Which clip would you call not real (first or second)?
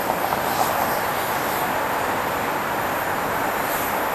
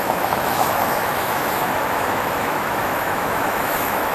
second